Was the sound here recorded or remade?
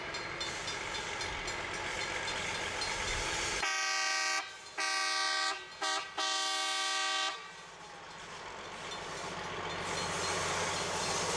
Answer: recorded